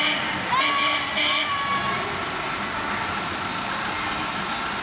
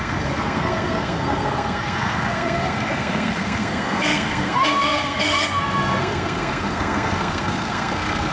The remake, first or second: second